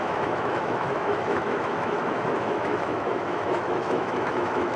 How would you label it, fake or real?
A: fake